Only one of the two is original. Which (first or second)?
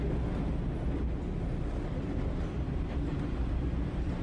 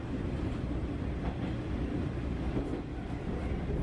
first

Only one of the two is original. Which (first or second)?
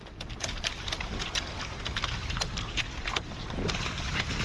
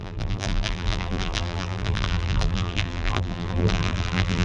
first